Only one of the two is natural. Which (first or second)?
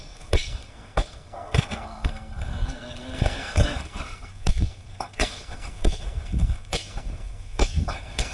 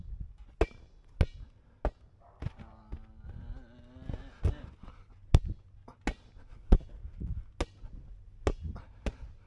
second